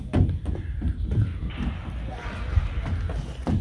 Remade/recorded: recorded